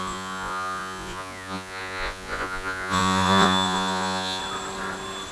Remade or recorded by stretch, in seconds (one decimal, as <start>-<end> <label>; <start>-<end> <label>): 0.0-4.4 remade; 4.4-5.3 recorded